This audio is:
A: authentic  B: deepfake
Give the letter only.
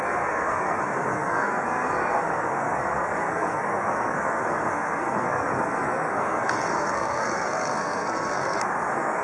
B